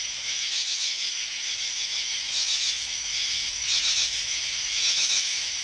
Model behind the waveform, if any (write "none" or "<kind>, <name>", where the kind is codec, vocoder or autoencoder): autoencoder, DAC-VAE